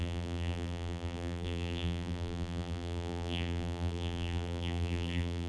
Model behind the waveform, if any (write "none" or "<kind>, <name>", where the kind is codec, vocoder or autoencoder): vocoder, BigVGAN v2